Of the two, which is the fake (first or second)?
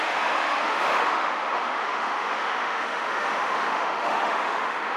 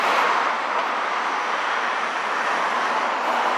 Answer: first